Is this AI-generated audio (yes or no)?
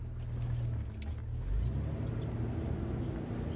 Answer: no